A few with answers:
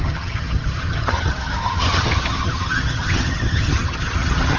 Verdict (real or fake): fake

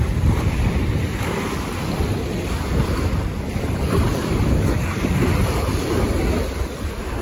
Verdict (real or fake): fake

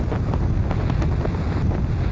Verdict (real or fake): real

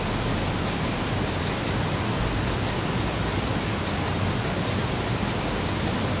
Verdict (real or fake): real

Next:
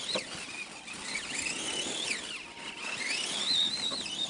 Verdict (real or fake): real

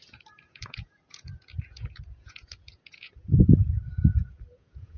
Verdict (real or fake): fake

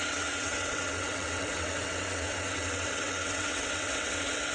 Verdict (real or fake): fake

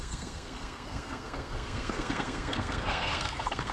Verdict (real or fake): fake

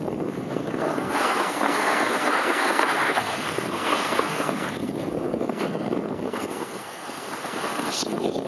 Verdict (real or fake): fake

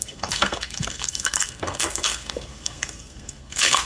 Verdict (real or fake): fake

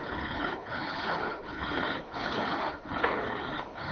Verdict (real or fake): fake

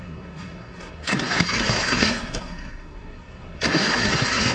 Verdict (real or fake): fake